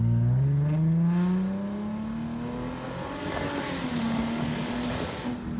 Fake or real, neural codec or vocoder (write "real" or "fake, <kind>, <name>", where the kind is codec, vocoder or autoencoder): real